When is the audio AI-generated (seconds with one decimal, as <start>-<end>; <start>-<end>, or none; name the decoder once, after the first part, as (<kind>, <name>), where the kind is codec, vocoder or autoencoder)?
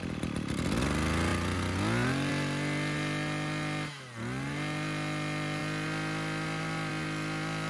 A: none